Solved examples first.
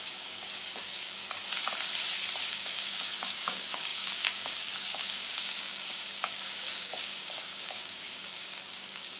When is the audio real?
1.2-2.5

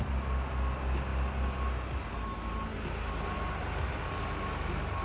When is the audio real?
0.0-5.0

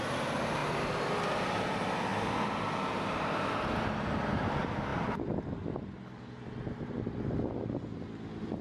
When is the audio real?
0.0-8.6

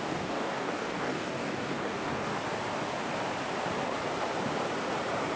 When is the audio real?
2.3-5.4